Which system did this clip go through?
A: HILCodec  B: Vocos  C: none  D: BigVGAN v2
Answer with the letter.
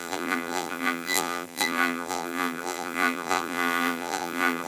D